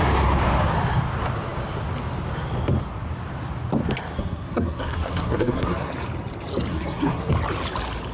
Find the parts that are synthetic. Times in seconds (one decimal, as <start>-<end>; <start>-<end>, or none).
4.2-5.9; 6.7-7.3